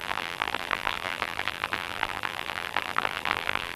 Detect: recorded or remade remade